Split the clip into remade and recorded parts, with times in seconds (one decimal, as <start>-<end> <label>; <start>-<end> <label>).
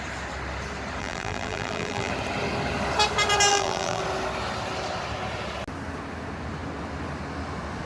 0.0-1.0 recorded; 1.0-2.1 remade; 2.1-3.5 recorded; 3.5-4.0 remade; 4.0-7.8 recorded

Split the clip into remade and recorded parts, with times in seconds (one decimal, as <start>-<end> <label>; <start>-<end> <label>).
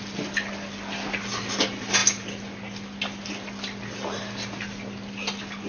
0.0-5.7 recorded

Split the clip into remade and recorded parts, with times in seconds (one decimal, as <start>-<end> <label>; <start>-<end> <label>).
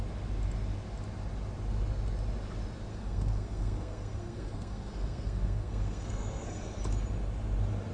0.0-2.9 recorded; 2.9-6.8 remade; 6.8-7.9 recorded